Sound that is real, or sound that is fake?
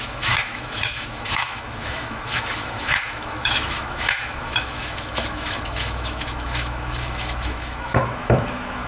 fake